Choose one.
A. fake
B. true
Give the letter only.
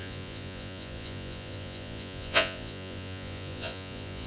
A